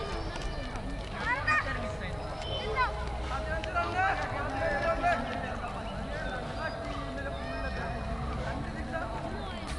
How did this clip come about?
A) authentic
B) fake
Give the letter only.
A